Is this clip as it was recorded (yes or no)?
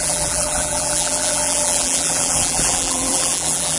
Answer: no